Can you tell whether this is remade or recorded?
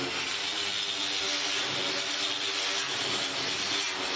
recorded